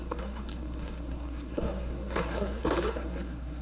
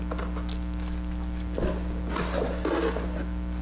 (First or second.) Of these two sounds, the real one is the second